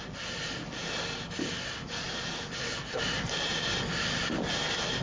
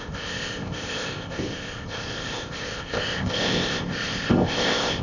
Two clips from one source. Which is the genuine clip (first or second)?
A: first